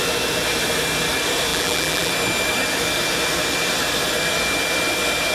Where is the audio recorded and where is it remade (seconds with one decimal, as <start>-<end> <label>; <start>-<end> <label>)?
0.0-1.5 recorded; 1.5-2.1 remade; 2.1-5.3 recorded